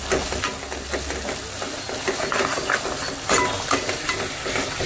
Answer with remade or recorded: recorded